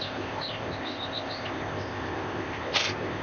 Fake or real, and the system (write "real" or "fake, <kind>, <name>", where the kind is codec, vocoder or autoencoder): fake, codec, ZipCodec